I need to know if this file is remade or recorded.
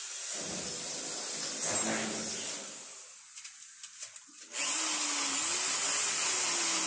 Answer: recorded